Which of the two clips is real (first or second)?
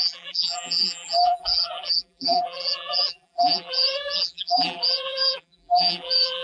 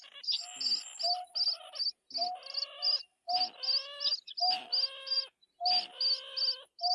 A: second